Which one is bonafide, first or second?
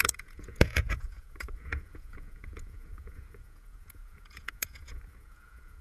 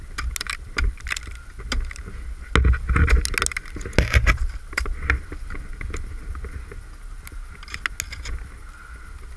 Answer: second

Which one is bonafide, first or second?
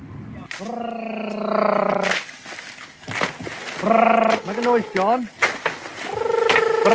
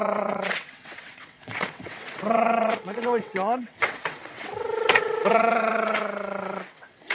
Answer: first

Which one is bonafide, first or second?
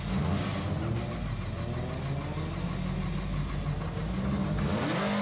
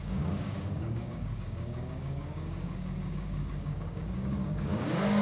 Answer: first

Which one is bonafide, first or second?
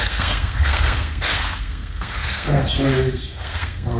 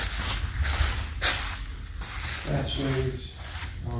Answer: second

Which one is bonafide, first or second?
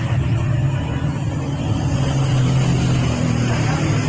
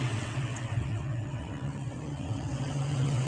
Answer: first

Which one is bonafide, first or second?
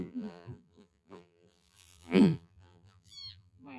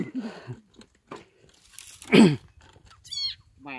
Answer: second